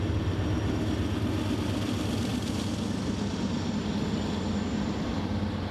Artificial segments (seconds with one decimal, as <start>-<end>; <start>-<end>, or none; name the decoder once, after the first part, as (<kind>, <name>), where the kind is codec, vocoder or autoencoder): none